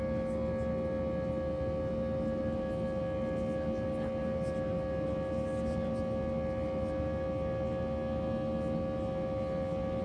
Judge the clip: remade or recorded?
recorded